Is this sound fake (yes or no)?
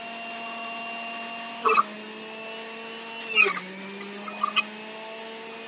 no